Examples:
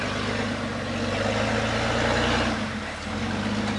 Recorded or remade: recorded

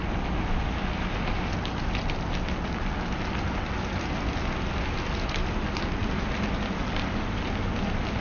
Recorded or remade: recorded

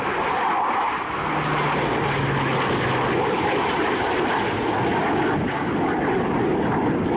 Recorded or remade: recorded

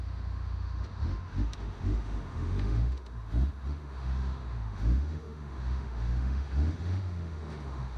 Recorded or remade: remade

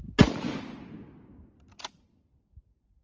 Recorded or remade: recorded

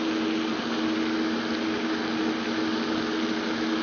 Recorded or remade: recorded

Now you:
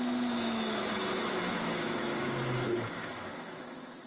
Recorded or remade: remade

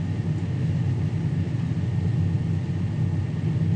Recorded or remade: recorded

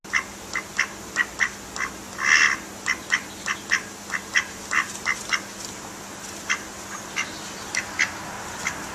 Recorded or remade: recorded